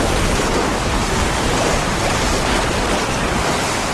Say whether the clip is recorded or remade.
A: recorded